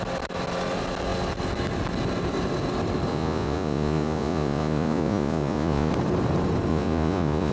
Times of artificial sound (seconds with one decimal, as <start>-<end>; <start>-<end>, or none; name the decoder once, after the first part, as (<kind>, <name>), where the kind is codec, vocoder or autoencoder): 3.1-5.9 (vocoder, Vocos); 6.7-7.5